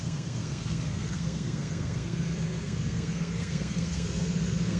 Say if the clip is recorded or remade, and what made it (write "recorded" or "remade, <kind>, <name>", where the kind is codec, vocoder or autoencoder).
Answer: remade, codec, SNAC